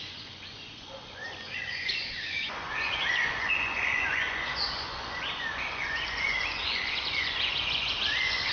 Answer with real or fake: fake